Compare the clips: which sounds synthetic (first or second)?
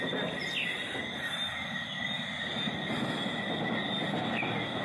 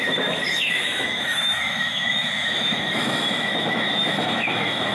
second